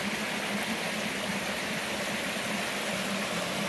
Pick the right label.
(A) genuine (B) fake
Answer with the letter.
A